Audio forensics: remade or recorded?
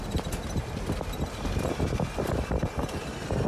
recorded